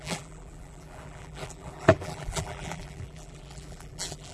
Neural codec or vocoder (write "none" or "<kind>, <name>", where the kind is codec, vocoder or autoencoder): vocoder, BigVGAN v2